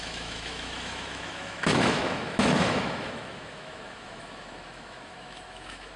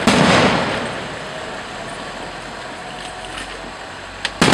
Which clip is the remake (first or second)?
first